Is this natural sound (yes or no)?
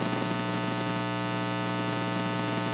yes